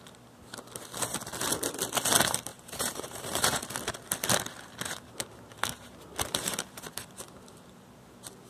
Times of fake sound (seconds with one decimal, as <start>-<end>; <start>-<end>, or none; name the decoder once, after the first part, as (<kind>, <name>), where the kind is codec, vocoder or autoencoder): 2.5-3.6 (vocoder, BigVGAN v2)